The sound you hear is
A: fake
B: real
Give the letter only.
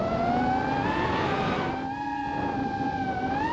B